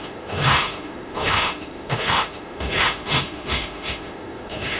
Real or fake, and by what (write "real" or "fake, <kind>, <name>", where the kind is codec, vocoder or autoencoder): fake, autoencoder, DAC-VAE